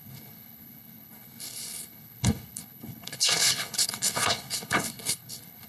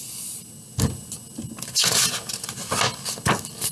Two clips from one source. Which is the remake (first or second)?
first